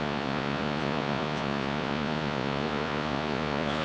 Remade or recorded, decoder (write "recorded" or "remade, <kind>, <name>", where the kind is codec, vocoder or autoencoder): remade, vocoder, Vocos